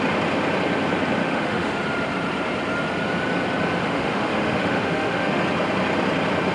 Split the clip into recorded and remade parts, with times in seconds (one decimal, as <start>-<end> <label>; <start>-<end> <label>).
0.0-1.2 recorded; 1.2-1.8 remade; 1.8-3.8 recorded; 3.8-5.4 remade; 5.4-6.5 recorded